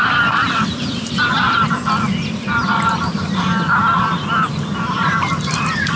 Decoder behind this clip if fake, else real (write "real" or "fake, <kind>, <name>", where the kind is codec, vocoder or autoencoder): real